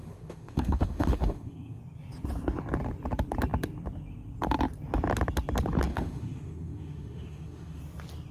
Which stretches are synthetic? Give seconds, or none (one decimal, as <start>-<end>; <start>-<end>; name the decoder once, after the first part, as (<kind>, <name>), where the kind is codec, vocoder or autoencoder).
0.0-1.8 (autoencoder, DAC-VAE); 5.9-7.8